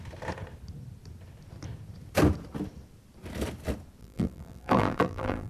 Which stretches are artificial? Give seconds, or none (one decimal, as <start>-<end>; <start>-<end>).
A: 4.0-5.5